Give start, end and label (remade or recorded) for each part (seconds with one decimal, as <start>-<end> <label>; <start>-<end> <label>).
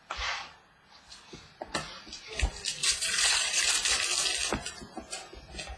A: 0.0-2.8 recorded; 2.8-3.6 remade; 3.6-5.8 recorded